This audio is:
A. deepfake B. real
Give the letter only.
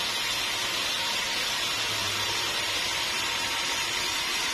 B